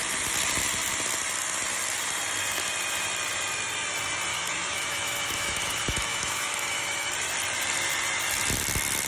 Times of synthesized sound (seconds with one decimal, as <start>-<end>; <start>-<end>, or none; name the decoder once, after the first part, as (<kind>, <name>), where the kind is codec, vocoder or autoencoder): 4.3-7.1 (autoencoder, DAC-VAE)